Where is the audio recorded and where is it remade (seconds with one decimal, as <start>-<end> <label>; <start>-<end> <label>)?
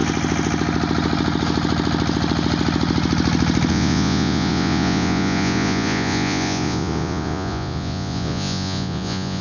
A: 0.0-3.7 recorded; 3.7-9.4 remade